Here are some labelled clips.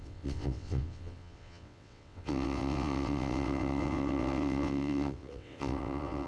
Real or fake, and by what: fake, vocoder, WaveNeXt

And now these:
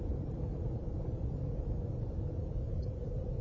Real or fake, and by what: fake, vocoder, BigVGAN v2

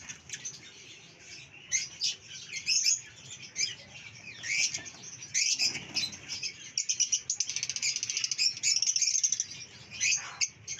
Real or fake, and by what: real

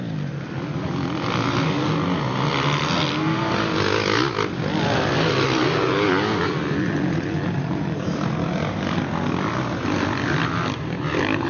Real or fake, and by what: real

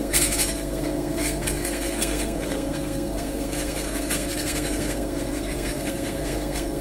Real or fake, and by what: fake, codec, SNAC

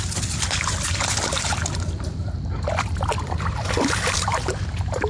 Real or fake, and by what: fake, vocoder, BigVGAN v2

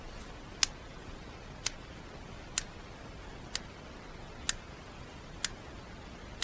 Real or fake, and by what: real